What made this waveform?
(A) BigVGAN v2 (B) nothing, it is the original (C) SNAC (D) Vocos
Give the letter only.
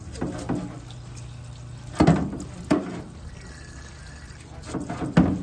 B